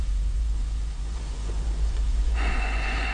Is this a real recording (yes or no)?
no